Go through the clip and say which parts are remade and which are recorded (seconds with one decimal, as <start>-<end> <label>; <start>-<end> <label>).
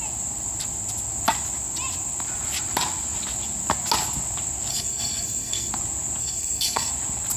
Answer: 0.0-4.7 recorded; 4.7-5.7 remade; 5.7-6.2 recorded; 6.2-6.9 remade; 6.9-7.4 recorded